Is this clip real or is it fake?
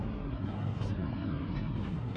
fake